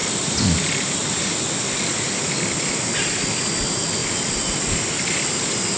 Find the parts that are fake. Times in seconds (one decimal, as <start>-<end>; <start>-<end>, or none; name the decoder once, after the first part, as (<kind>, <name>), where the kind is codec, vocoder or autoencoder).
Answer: none